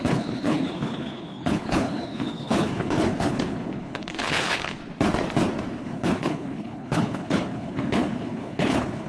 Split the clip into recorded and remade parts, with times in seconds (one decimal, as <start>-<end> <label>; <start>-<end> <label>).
0.0-4.8 remade; 4.8-5.8 recorded; 5.8-9.1 remade